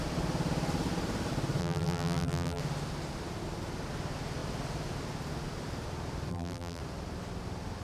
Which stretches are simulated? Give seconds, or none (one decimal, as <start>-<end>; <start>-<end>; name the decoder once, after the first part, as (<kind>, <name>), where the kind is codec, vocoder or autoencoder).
1.6-2.6 (vocoder, BigVGAN v2); 6.3-6.8